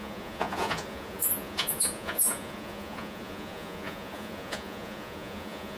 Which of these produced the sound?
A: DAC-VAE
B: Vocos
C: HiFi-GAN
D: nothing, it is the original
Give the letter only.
B